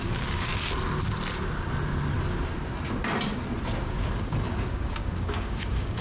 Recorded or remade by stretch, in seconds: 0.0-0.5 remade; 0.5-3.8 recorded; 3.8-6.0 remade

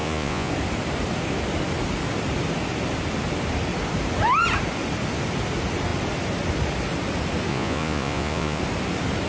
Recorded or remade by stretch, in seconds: 0.0-0.5 remade; 0.5-7.5 recorded; 7.5-8.6 remade; 8.6-9.3 recorded

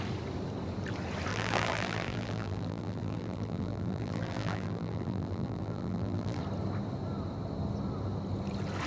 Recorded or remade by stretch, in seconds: 0.0-1.3 recorded; 1.3-6.4 remade; 6.4-8.9 recorded

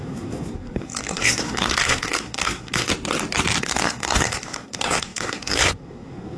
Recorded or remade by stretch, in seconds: 0.0-2.9 remade; 2.9-3.6 recorded; 3.6-6.4 remade

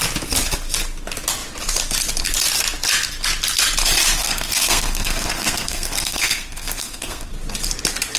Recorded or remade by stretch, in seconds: 0.0-4.2 recorded; 4.2-7.3 remade; 7.3-8.2 recorded